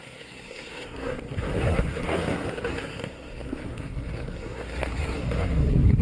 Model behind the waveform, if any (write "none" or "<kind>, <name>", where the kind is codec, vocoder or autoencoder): codec, SNAC